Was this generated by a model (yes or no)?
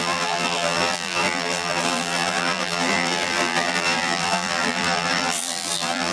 yes